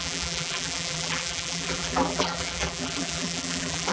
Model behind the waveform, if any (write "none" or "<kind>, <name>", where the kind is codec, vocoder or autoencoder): vocoder, BigVGAN v2